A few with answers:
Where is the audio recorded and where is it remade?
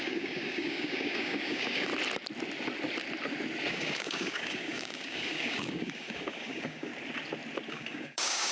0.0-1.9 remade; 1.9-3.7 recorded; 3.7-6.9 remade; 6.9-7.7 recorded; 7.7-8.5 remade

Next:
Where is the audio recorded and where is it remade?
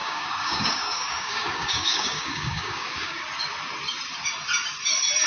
0.0-3.2 remade; 3.2-5.3 recorded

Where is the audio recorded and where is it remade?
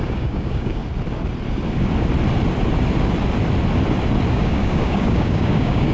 0.0-0.8 remade; 0.8-4.3 recorded; 4.3-5.9 remade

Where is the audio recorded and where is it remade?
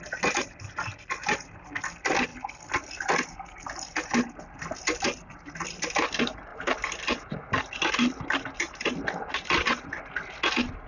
0.0-10.9 recorded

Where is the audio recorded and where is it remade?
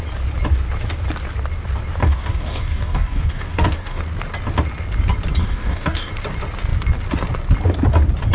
0.0-2.0 recorded; 2.0-4.0 remade; 4.0-5.4 recorded; 5.4-6.1 remade; 6.1-8.3 recorded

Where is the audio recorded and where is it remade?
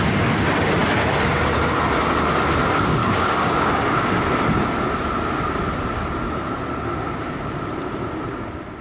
0.0-3.0 recorded; 3.0-4.2 remade; 4.2-8.8 recorded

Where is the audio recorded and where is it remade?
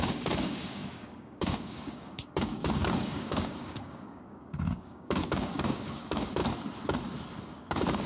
0.0-6.4 remade; 6.4-7.4 recorded; 7.4-8.1 remade